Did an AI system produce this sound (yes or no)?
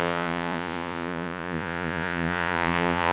yes